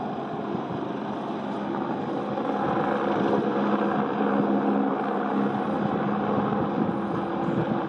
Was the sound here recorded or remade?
recorded